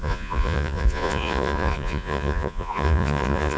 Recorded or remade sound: remade